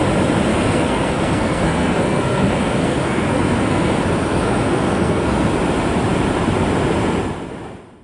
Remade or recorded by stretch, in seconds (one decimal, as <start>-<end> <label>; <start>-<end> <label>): 0.0-0.5 recorded; 0.5-3.9 remade; 3.9-4.3 recorded; 4.3-5.5 remade; 5.5-8.0 recorded